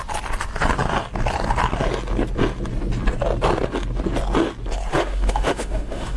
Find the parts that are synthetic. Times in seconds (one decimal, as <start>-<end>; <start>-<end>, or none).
4.9-6.2